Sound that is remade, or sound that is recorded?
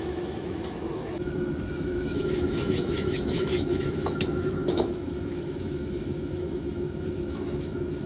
remade